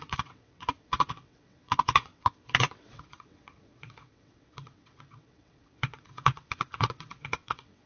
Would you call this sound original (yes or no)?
no